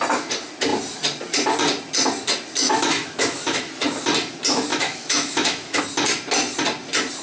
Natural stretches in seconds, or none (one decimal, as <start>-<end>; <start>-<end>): 0.0-2.6; 3.7-4.7; 5.8-7.2